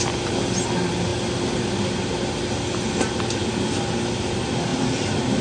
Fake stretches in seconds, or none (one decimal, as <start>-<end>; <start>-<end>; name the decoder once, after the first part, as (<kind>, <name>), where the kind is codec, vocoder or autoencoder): none